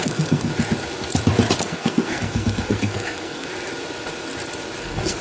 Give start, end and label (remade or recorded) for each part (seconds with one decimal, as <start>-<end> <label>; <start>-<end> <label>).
0.0-0.5 remade; 0.5-1.6 recorded; 1.6-3.5 remade; 3.5-4.8 recorded; 4.8-5.2 remade